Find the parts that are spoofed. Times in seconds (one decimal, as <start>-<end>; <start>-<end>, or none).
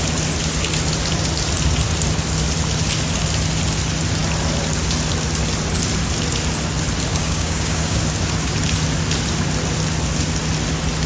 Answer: 7.1-8.0